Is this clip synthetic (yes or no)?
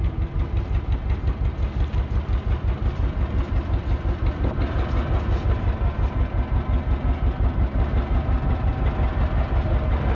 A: no